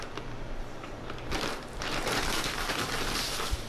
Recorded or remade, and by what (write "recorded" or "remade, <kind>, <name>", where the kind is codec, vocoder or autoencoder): remade, vocoder, BigVGAN v2